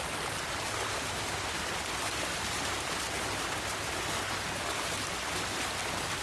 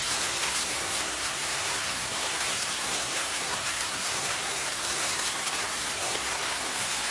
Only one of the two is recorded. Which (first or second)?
first